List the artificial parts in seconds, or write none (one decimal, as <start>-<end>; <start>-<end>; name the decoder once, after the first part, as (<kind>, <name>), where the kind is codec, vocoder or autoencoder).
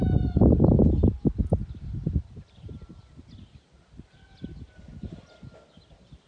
none